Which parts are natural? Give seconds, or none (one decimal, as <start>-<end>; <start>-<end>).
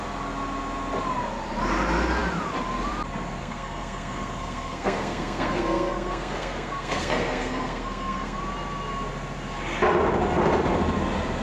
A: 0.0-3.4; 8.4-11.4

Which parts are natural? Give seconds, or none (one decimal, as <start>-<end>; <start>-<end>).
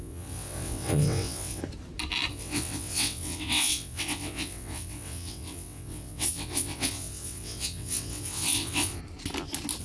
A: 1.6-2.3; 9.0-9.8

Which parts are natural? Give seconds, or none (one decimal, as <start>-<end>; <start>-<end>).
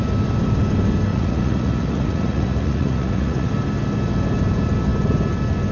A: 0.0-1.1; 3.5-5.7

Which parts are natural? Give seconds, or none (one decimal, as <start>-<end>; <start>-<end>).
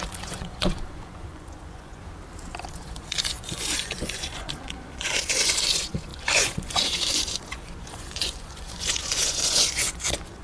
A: 2.0-2.7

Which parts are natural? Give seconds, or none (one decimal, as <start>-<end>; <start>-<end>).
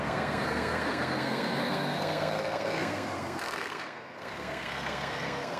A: none